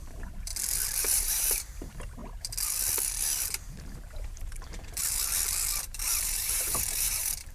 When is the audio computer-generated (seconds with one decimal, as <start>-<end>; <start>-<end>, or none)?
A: 0.0-0.5; 1.0-2.2; 4.2-5.0; 5.8-7.5